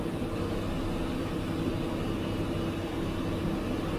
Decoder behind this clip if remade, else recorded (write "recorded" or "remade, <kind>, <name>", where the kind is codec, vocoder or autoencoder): recorded